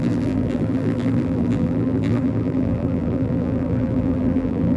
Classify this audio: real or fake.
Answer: fake